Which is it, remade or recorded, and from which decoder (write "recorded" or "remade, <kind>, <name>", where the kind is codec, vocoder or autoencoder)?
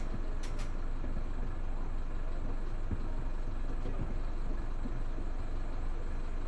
recorded